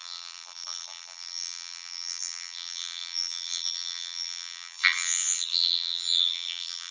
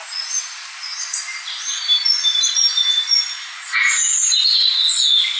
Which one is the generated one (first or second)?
first